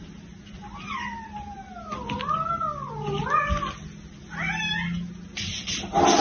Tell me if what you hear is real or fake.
real